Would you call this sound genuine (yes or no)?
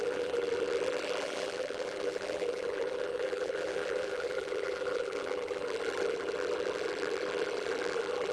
no